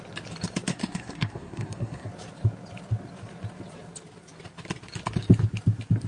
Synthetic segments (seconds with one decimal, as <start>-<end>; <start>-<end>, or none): 0.7-2.1